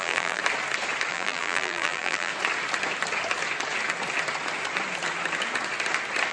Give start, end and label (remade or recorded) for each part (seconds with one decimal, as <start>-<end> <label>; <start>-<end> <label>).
0.0-0.4 remade; 0.4-1.1 recorded; 1.1-2.3 remade; 2.3-6.3 recorded